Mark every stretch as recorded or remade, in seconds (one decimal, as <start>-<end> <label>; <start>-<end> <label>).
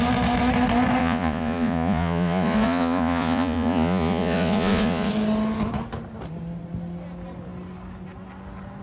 0.0-1.0 recorded; 1.0-5.1 remade; 5.1-8.8 recorded